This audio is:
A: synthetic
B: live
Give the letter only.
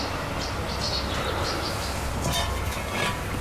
B